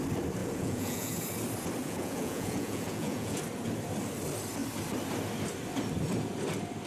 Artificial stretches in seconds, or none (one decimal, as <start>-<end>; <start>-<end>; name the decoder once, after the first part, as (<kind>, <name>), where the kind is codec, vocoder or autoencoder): 0.4-1.2 (vocoder, Vocos); 1.8-3.4